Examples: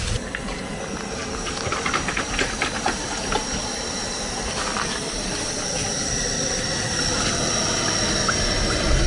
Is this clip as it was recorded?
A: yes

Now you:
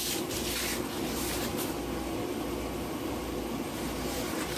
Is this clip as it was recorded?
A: yes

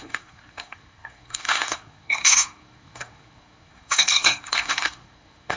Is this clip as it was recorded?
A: no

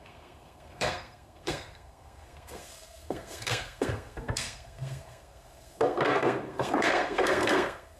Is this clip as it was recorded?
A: no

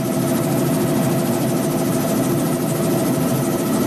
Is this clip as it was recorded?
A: yes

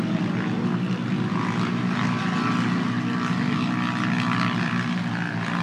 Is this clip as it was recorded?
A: yes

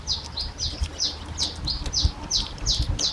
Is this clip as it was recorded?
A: yes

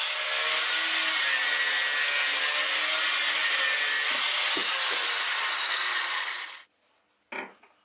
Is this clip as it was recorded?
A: yes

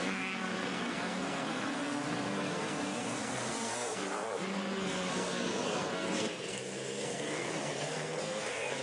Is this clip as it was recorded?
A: no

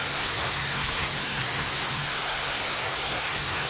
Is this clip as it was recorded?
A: no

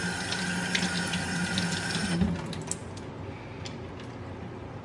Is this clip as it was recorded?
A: yes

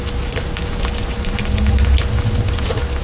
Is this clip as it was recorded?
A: yes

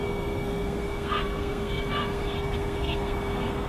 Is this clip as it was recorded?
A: no